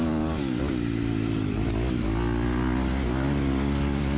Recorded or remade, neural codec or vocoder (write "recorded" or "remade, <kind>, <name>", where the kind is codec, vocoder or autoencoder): recorded